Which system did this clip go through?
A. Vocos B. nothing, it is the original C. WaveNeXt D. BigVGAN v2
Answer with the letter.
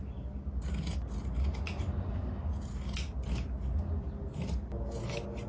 B